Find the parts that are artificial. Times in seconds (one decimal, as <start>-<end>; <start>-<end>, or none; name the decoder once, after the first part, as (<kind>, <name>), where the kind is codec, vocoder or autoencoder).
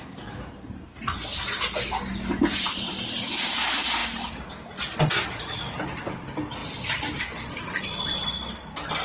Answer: 6.6-7.2 (vocoder, BigVGAN v2)